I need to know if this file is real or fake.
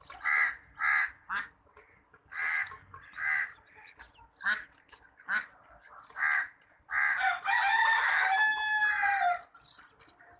real